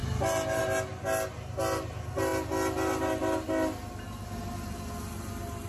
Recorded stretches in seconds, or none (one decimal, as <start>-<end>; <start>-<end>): 0.0-5.7